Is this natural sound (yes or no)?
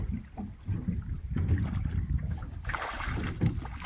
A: yes